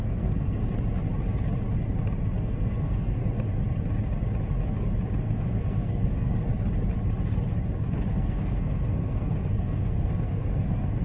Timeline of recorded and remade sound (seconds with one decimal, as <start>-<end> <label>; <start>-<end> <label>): 0.0-0.6 remade; 0.6-2.4 recorded; 2.4-3.2 remade; 3.2-5.2 recorded; 5.2-6.5 remade; 6.5-8.1 recorded; 8.1-11.0 remade